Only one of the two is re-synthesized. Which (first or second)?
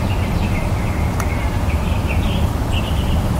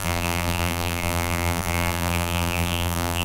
second